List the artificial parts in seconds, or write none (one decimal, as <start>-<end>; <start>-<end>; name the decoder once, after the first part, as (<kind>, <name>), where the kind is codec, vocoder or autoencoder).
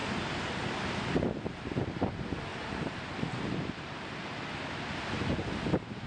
2.5-3.7 (vocoder, BigVGAN v2)